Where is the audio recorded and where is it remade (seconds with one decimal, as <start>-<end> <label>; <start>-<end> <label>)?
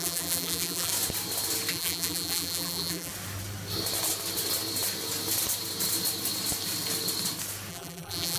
0.0-0.9 remade; 0.9-1.7 recorded; 1.7-3.1 remade; 3.1-7.7 recorded; 7.7-8.4 remade